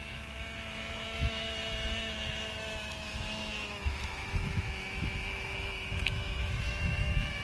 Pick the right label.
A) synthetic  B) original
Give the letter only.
A